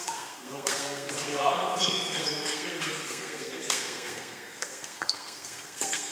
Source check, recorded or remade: remade